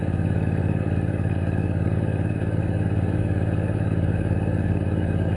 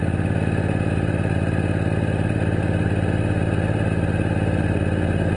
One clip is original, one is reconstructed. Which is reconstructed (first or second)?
first